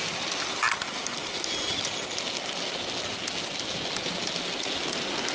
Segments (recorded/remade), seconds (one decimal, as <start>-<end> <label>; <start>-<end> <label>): 0.0-5.3 recorded

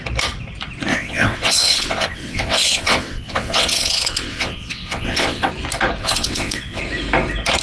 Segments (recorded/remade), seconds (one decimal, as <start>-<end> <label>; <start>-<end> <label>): 0.0-0.9 recorded; 0.9-5.5 remade; 5.5-6.0 recorded; 6.0-6.8 remade; 6.8-7.6 recorded

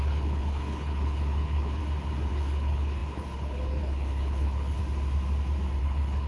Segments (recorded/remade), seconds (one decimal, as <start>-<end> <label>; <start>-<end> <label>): 0.0-1.8 remade; 1.8-2.3 recorded; 2.3-4.8 remade; 4.8-5.8 recorded; 5.8-6.3 remade

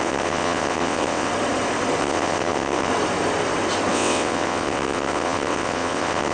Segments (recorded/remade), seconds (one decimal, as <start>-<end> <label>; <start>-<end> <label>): 0.0-1.3 remade; 1.3-2.0 recorded; 2.0-2.9 remade; 2.9-3.9 recorded; 3.9-6.3 remade

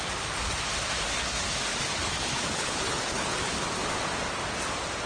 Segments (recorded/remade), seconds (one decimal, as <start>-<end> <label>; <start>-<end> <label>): 0.0-1.7 recorded; 1.7-3.6 remade; 3.6-5.1 recorded

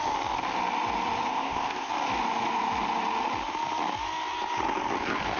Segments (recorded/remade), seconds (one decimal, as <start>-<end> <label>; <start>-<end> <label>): 0.0-1.3 recorded; 1.3-1.9 remade; 1.9-5.4 recorded

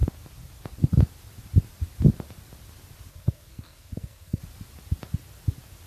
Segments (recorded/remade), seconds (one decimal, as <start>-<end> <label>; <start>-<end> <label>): 0.0-3.1 recorded; 3.1-4.4 remade; 4.4-5.9 recorded